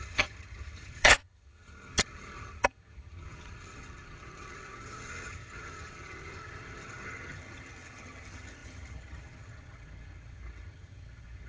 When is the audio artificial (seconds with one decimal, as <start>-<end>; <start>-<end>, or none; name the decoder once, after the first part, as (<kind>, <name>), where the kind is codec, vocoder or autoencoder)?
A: 0.0-11.5 (vocoder, HiFi-GAN)